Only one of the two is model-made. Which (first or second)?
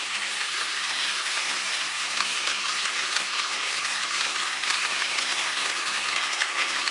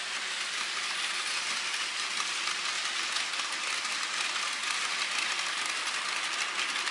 first